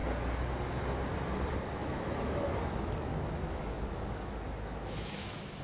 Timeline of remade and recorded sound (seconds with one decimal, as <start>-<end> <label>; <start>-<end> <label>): 0.0-1.8 recorded; 1.8-5.6 remade